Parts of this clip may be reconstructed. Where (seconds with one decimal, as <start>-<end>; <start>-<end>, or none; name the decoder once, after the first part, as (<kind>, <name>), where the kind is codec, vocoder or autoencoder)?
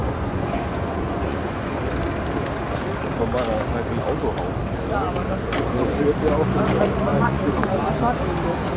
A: 0.0-1.8 (vocoder, Vocos); 7.1-7.9